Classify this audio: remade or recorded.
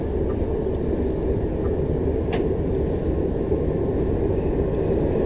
recorded